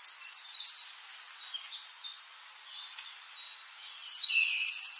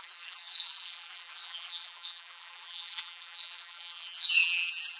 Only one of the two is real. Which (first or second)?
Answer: first